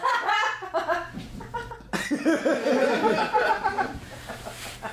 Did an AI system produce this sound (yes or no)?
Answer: no